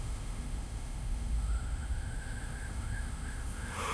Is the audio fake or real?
fake